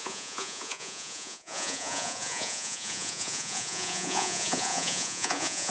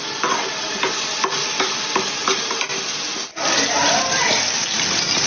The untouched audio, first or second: second